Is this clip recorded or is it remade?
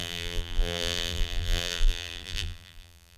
remade